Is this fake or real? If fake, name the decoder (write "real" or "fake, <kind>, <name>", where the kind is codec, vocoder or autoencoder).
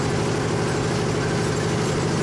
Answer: real